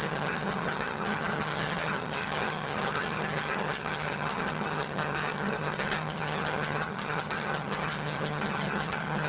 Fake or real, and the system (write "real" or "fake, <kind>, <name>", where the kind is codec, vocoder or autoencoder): fake, vocoder, HiFi-GAN